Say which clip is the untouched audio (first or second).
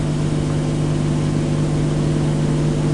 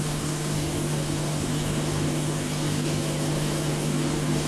first